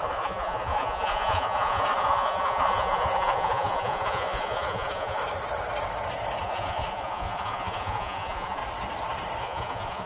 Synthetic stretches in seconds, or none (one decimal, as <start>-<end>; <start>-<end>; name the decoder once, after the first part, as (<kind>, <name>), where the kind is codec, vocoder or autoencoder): 0.0-5.2 (vocoder, Vocos); 6.4-8.6; 9.4-10.1